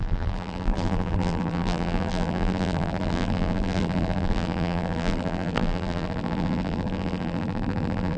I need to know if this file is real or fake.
fake